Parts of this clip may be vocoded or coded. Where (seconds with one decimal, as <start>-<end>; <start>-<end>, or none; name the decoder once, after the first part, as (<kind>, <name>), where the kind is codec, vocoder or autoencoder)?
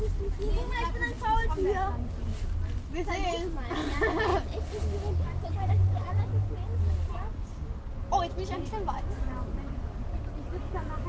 7.3-8.0 (codec, DAC)